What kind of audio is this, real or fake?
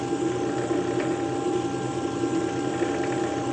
real